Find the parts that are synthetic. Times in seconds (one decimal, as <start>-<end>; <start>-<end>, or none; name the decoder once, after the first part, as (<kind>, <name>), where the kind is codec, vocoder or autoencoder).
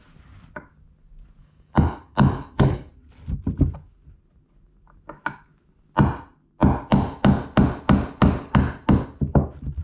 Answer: 1.4-2.9 (codec, DAC)